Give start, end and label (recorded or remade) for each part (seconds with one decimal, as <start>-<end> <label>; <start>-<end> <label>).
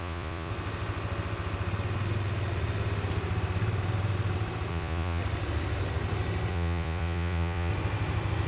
0.0-0.5 remade; 0.5-4.7 recorded; 4.7-5.2 remade; 5.2-6.5 recorded; 6.5-7.7 remade; 7.7-8.5 recorded